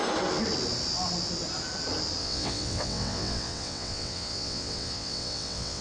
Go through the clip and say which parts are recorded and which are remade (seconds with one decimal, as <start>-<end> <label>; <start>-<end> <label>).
0.0-2.2 recorded; 2.2-5.8 remade